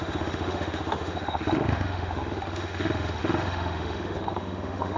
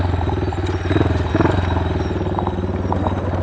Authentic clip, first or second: second